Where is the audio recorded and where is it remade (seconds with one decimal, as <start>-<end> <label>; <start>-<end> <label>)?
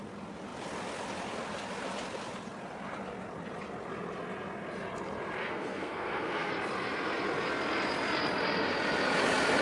0.0-5.4 recorded; 5.4-6.5 remade; 6.5-9.6 recorded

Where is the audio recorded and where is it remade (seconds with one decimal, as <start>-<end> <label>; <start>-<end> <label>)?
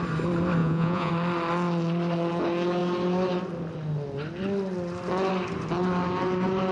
0.0-0.6 recorded; 0.6-1.1 remade; 1.1-6.7 recorded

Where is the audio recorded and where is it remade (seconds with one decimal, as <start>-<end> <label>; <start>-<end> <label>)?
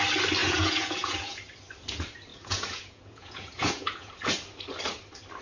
0.0-0.4 recorded; 0.4-1.4 remade; 1.4-2.3 recorded; 2.3-4.1 remade; 4.1-5.4 recorded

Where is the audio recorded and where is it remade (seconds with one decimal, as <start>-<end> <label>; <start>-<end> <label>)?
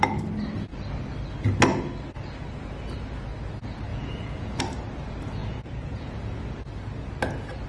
0.0-3.9 recorded; 3.9-4.6 remade; 4.6-5.4 recorded; 5.4-6.4 remade; 6.4-7.7 recorded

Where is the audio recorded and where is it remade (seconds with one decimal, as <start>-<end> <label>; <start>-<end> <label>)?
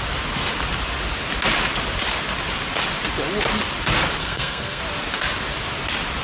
0.0-4.2 recorded; 4.2-4.8 remade; 4.8-6.2 recorded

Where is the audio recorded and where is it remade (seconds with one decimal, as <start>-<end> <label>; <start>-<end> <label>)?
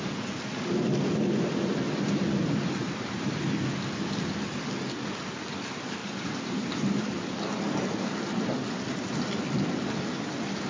0.0-2.8 recorded; 2.8-3.4 remade; 3.4-6.0 recorded; 6.0-7.4 remade; 7.4-10.7 recorded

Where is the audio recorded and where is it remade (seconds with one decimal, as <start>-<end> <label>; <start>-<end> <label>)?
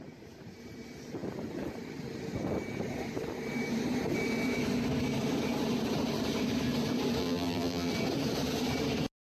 0.0-7.2 recorded; 7.2-7.9 remade; 7.9-9.3 recorded